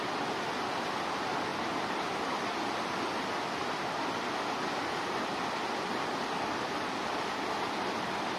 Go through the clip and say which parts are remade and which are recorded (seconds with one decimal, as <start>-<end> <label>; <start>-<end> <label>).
0.0-8.4 recorded